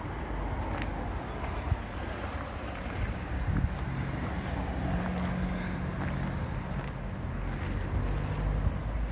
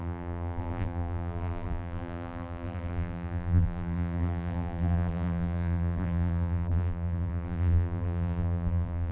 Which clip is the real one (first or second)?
first